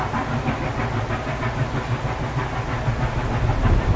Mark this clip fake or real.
real